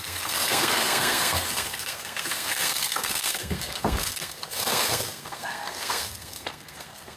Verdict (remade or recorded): remade